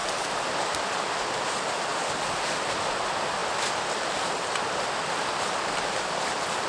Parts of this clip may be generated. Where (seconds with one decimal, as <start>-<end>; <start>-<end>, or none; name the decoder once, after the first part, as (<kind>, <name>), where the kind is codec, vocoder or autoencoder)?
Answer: 0.0-3.4 (vocoder, BigVGAN v2); 6.0-6.7